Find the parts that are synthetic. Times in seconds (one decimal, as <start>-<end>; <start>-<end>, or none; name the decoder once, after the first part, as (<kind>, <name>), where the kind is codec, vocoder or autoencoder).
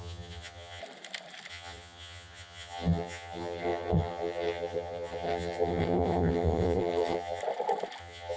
0.0-0.8 (vocoder, HiFi-GAN); 1.5-7.4; 8.0-8.4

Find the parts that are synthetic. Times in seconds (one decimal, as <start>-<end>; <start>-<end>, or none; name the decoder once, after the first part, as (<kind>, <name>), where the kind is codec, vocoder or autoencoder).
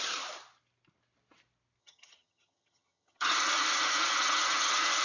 1.8-5.0 (vocoder, HiFi-GAN)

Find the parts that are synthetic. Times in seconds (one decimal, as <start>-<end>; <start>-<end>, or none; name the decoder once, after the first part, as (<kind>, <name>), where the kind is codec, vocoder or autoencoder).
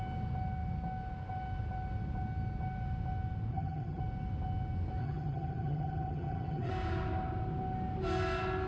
3.5-4.0 (vocoder, HiFi-GAN); 5.0-6.7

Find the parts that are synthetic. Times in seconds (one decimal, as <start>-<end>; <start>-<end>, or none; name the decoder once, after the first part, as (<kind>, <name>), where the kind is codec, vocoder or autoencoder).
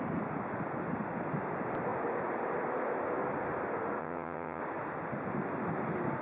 4.0-4.6 (vocoder, HiFi-GAN)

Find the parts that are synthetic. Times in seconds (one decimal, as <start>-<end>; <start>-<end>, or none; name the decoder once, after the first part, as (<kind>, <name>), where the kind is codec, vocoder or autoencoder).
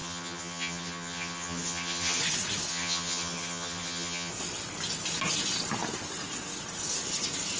0.0-2.2 (vocoder, HiFi-GAN); 2.7-4.3